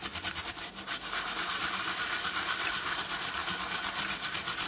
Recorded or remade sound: recorded